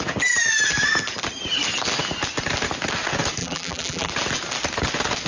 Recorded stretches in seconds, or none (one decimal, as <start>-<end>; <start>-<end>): 0.0-3.4; 4.1-5.3